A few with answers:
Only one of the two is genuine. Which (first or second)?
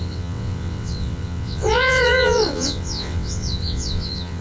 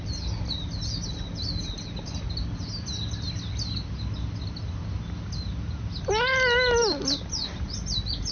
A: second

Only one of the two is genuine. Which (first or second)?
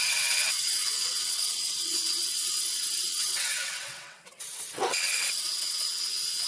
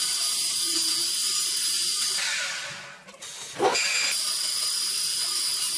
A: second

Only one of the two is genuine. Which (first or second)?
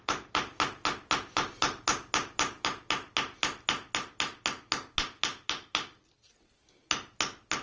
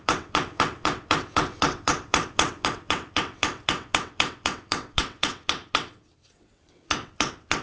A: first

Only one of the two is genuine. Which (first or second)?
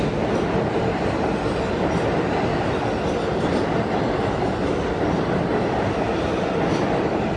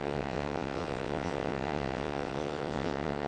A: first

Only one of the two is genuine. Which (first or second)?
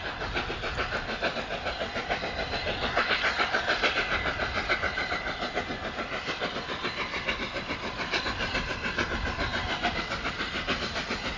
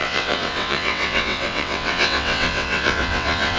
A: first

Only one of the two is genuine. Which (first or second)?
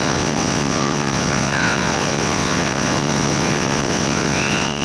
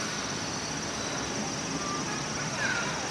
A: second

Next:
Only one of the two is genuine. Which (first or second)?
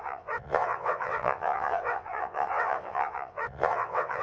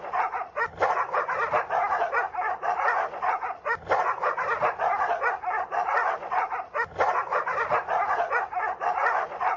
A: second